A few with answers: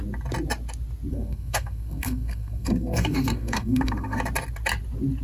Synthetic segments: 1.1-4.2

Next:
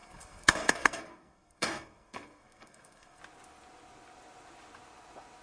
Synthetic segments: 0.0-3.2

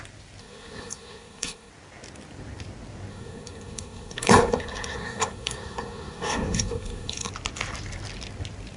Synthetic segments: 0.4-1.7; 3.1-7.3

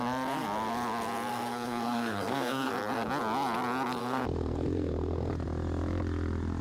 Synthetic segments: 1.3-2.7; 4.0-5.3

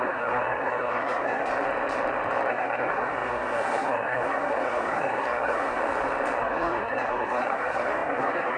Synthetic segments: 0.0-1.5; 2.5-5.8; 6.4-8.6

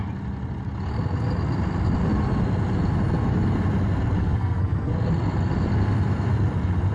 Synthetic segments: 4.2-4.9

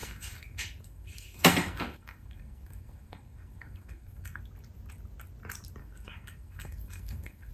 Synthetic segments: 0.0-4.4; 5.8-7.5